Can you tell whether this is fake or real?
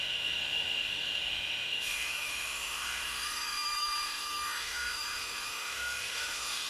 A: fake